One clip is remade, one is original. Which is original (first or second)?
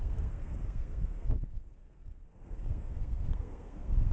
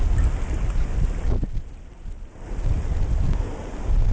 second